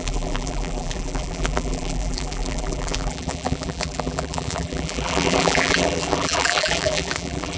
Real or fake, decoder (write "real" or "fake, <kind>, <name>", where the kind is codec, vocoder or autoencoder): fake, vocoder, BigVGAN v2